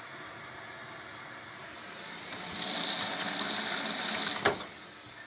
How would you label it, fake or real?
real